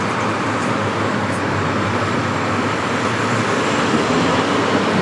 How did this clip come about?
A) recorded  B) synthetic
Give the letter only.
A